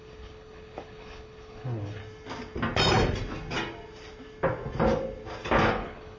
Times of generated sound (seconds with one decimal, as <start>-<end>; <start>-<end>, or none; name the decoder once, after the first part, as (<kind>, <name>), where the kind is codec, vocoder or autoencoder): 0.0-2.0 (codec, HILCodec); 5.7-6.2